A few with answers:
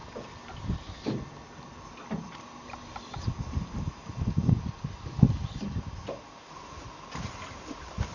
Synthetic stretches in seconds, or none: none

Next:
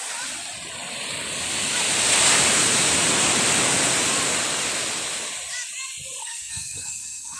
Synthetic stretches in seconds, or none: 6.2-7.4 (codec, SNAC)

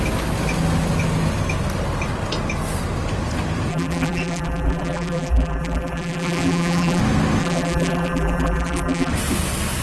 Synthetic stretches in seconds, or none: 3.7-7.0 (vocoder, BigVGAN v2); 7.4-9.1

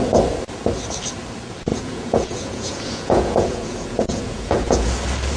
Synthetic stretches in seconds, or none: 1.7-4.9 (vocoder, Vocos)

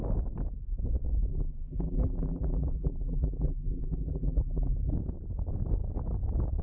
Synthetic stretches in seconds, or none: 1.3-4.9 (vocoder, BigVGAN v2)

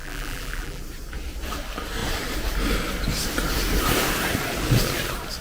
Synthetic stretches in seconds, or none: 0.0-0.8 (vocoder, BigVGAN v2)